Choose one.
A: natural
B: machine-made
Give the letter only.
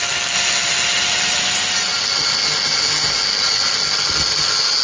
A